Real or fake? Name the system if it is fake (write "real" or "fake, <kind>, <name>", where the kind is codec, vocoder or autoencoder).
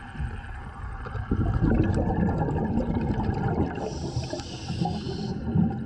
real